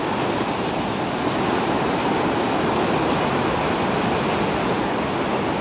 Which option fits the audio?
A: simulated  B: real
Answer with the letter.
B